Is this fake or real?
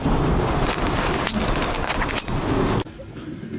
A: real